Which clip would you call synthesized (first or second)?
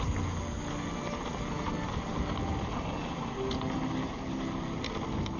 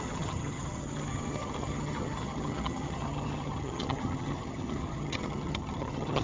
second